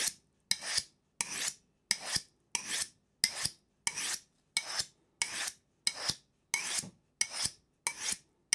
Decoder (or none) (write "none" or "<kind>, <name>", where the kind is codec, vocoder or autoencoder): none